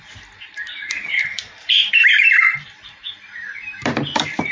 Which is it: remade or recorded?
remade